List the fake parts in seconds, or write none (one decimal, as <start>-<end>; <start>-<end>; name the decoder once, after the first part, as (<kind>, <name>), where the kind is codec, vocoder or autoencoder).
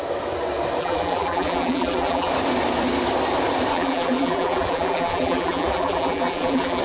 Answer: 0.8-2.3 (vocoder, BigVGAN v2); 3.7-6.8